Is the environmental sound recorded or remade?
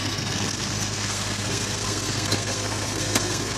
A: remade